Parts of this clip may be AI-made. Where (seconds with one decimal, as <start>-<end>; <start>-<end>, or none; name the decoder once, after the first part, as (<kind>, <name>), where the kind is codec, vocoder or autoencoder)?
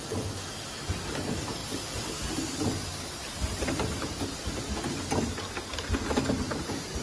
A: none